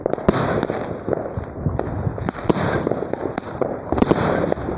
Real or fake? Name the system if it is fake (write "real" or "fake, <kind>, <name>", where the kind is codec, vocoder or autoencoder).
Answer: real